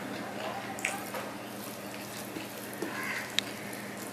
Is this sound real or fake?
real